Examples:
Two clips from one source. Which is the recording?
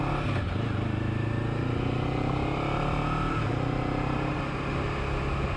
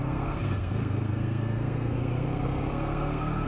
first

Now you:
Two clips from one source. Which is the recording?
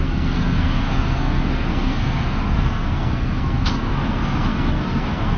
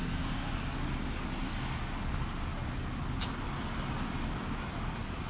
second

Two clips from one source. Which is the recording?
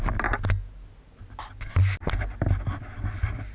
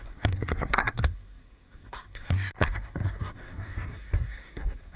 first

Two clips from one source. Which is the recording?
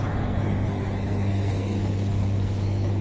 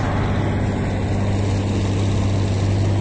second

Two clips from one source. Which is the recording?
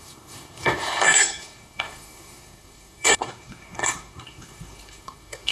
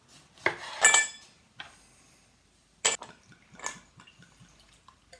second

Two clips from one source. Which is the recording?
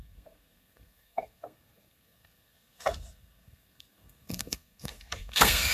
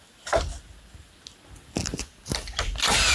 second